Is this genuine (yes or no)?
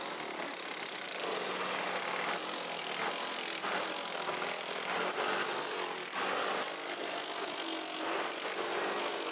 yes